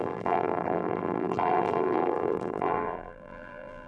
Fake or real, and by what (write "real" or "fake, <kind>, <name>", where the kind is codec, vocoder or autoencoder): fake, vocoder, BigVGAN v2